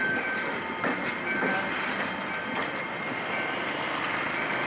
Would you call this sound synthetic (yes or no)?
no